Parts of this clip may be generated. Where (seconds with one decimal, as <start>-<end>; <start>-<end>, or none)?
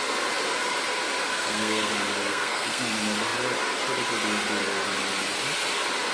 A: 1.3-1.9; 2.3-2.8